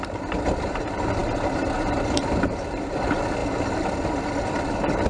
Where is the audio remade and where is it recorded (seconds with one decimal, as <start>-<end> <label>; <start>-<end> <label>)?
0.0-5.1 recorded